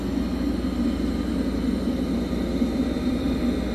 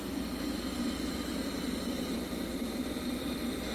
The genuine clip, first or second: first